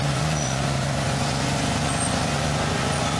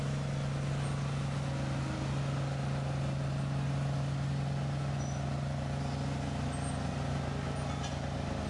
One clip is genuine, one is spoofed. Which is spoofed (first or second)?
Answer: first